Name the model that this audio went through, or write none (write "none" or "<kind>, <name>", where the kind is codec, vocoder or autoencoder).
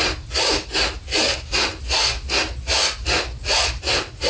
none